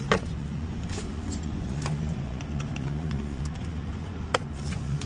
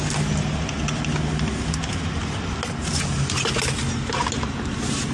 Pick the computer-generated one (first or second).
first